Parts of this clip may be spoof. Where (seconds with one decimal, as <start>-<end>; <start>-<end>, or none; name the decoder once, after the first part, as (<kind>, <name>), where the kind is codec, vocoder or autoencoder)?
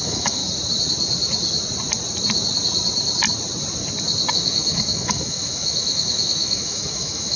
0.0-0.4 (autoencoder, DAC-VAE); 4.3-7.4